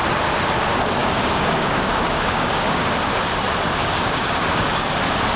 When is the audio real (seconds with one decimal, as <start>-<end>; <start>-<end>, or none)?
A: 0.0-1.0; 2.9-3.8; 4.9-5.4